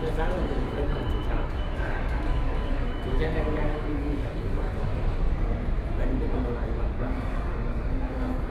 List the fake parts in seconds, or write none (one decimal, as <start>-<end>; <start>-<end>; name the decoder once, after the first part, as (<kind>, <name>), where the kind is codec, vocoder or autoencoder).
0.0-4.9 (codec, DAC); 6.9-8.5